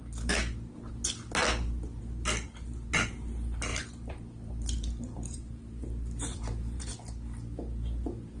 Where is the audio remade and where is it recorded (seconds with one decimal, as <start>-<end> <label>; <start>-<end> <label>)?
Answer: 0.0-3.7 recorded; 3.7-5.5 remade; 5.5-6.3 recorded; 6.3-6.9 remade; 6.9-8.4 recorded